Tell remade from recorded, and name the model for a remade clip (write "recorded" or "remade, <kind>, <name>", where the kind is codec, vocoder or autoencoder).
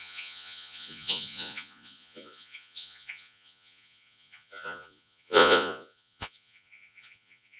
remade, vocoder, Vocos